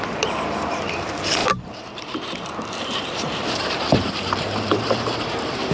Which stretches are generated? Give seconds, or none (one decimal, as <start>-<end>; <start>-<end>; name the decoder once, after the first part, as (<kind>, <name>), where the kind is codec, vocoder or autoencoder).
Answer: 0.0-5.7 (vocoder, BigVGAN v2)